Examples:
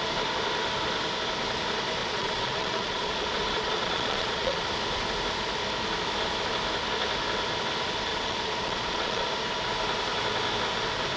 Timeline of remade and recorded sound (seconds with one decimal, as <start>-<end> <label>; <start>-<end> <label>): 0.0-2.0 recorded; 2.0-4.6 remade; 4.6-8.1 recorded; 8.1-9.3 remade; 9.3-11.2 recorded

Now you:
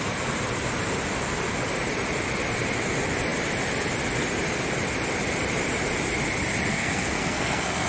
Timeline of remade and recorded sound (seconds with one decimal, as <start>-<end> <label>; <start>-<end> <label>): 0.0-6.7 recorded; 6.7-7.9 remade

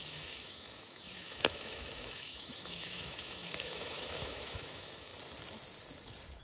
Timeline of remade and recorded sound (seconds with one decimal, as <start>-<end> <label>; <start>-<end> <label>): 0.0-5.1 remade; 5.1-6.4 recorded

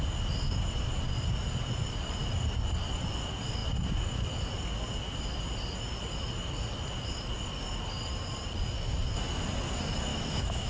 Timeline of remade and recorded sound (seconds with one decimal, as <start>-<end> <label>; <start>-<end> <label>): 0.0-10.1 recorded; 10.1-10.7 remade

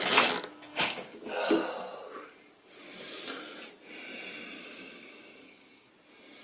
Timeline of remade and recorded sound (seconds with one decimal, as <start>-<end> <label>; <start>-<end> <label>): 0.0-0.7 recorded; 0.7-1.5 remade; 1.5-4.6 recorded; 4.6-5.9 remade; 5.9-6.4 recorded

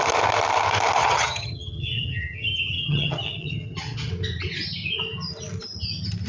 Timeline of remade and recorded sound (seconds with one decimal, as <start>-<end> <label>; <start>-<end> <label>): 0.0-1.0 recorded; 1.0-4.1 remade; 4.1-6.3 recorded

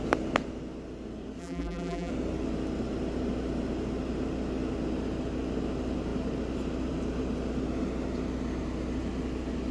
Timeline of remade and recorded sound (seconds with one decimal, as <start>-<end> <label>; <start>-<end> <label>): 0.0-1.4 recorded; 1.4-2.1 remade; 2.1-9.7 recorded

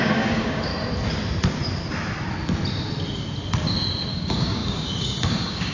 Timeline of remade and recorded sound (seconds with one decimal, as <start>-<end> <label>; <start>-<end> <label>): 0.0-0.7 remade; 0.7-4.1 recorded; 4.1-5.7 remade